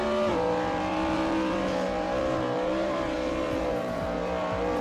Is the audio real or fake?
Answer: fake